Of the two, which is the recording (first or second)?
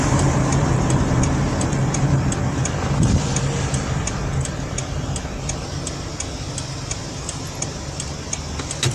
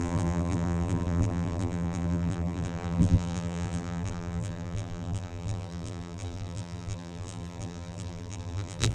first